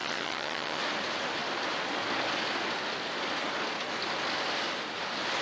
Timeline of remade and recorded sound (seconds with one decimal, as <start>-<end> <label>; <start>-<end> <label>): 0.0-0.8 remade; 0.8-5.4 recorded